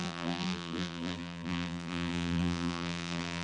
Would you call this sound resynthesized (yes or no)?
yes